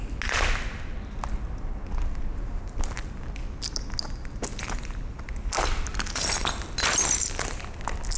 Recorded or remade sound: recorded